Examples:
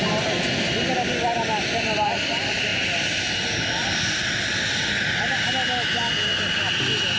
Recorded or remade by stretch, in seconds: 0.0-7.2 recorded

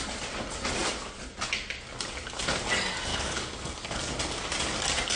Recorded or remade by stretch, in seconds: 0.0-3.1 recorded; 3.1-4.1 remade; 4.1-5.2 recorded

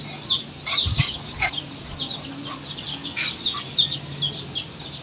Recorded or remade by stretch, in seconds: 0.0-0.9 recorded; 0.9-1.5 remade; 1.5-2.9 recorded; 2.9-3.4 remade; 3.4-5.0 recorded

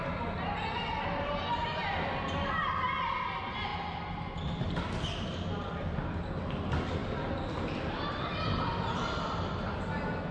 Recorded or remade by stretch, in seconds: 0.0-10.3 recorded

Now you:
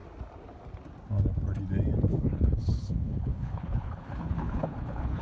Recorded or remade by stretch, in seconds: 0.0-2.1 recorded; 2.1-5.2 remade

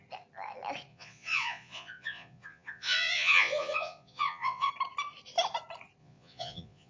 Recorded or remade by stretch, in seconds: 0.0-0.9 recorded; 0.9-4.7 remade; 4.7-6.0 recorded; 6.0-6.9 remade